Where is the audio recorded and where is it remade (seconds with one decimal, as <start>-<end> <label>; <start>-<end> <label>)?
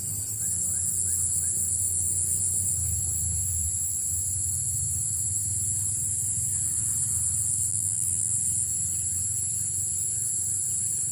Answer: 0.0-7.7 recorded; 7.7-8.3 remade; 8.3-11.1 recorded